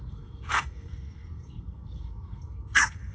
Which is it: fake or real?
fake